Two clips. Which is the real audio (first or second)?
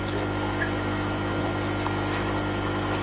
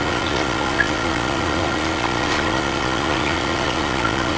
first